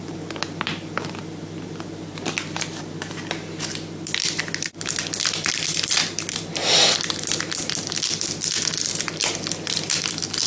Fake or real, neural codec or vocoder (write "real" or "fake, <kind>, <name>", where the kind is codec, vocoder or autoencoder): fake, vocoder, BigVGAN v2